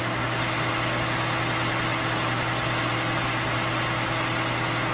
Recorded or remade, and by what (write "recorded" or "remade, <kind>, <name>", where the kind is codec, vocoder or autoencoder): recorded